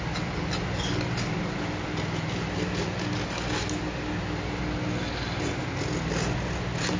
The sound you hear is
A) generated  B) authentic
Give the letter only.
B